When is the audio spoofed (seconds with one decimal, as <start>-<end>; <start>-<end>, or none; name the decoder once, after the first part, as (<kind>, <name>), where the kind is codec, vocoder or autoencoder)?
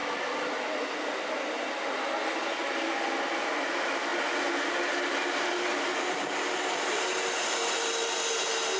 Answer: none